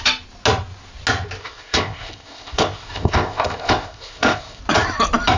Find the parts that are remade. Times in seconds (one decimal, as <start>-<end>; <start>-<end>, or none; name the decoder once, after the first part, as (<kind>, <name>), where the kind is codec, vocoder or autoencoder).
1.4-4.6 (codec, ZipCodec)